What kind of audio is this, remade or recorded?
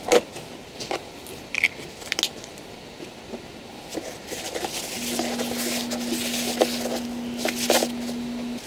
recorded